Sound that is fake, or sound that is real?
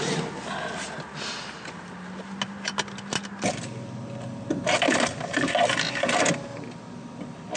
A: real